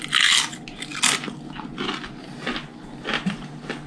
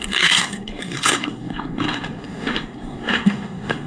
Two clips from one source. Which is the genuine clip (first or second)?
first